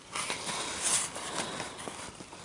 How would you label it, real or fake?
real